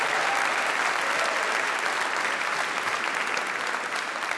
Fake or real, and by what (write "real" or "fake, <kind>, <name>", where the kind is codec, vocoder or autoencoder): real